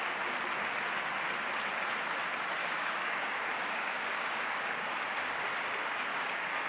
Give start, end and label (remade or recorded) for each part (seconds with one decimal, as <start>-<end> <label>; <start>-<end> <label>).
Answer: 0.0-2.6 recorded; 2.6-5.0 remade; 5.0-6.1 recorded; 6.1-6.7 remade